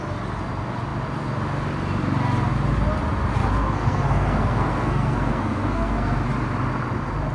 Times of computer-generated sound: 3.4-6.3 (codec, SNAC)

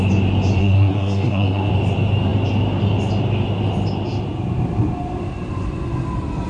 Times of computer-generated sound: 0.6-1.7 (codec, SNAC)

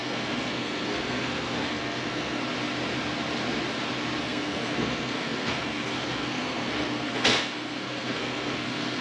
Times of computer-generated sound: 0.0-2.4 (codec, SNAC); 4.2-9.0

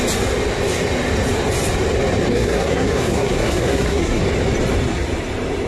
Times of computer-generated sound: 2.3-4.2 (codec, SNAC)